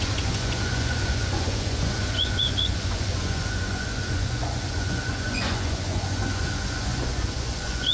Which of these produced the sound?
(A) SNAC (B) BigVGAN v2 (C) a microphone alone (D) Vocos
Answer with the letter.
D